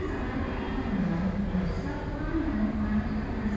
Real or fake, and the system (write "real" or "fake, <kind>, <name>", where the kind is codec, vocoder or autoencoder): real